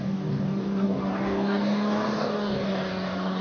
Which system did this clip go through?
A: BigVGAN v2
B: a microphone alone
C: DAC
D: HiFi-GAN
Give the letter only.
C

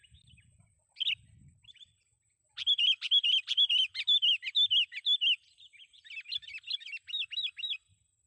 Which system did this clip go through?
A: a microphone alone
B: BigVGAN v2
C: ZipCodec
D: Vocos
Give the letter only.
A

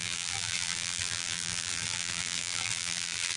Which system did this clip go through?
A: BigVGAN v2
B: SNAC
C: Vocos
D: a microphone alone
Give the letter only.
A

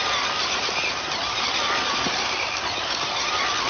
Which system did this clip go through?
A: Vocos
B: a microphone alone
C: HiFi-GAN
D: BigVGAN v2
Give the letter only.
B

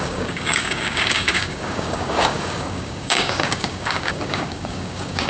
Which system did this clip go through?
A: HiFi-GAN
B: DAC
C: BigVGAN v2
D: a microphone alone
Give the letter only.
B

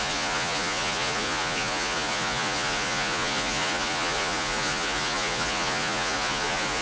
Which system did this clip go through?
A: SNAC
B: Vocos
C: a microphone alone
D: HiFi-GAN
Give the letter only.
B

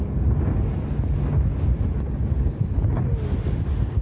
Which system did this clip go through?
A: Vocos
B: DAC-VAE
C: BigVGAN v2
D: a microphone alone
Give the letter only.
D